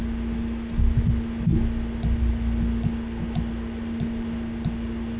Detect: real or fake real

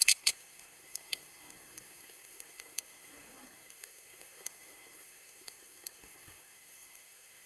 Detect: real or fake fake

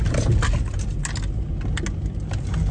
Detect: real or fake real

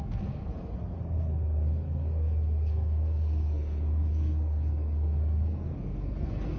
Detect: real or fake fake